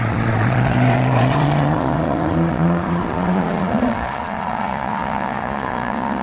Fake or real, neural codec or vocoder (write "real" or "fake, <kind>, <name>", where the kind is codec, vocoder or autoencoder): fake, vocoder, Vocos